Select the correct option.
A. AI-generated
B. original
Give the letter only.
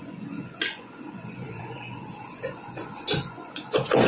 A